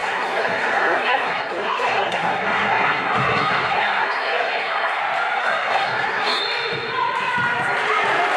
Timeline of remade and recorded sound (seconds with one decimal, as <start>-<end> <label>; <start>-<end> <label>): 0.0-5.0 remade; 5.0-5.4 recorded; 5.4-6.4 remade; 6.4-8.4 recorded